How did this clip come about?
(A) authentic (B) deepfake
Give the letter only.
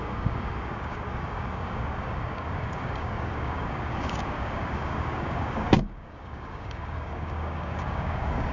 B